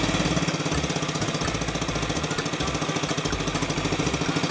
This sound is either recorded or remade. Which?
recorded